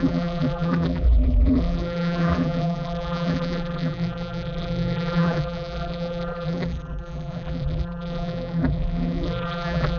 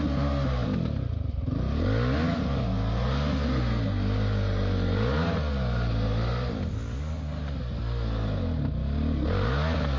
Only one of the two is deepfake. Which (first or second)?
first